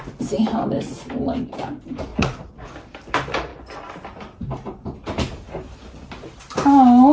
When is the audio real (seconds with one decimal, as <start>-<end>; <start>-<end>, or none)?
0.0-2.1; 2.7-7.1